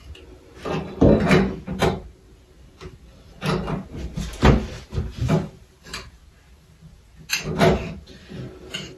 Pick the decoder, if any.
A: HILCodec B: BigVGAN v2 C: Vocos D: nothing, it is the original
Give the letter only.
D